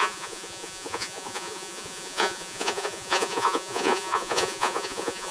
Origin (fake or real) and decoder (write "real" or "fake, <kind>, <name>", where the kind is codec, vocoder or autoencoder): fake, vocoder, Vocos